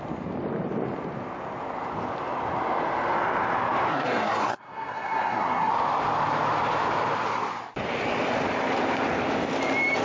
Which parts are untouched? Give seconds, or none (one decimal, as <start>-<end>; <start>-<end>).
0.0-3.9; 5.7-10.0